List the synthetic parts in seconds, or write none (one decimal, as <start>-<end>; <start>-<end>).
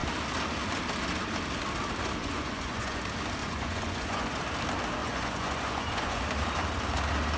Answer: 2.2-3.0; 3.4-4.4; 5.0-6.2